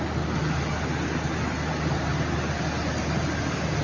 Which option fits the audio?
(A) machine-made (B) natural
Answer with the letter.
B